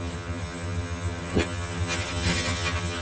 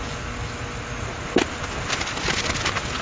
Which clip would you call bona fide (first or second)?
second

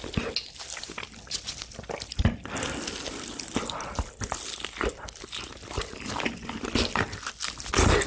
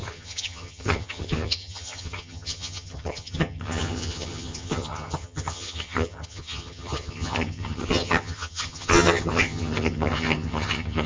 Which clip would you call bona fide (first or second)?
first